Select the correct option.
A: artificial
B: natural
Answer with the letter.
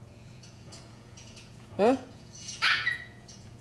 A